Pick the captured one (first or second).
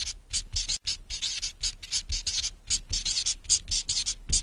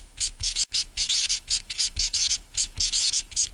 first